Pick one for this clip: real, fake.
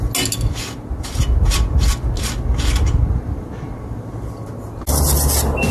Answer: real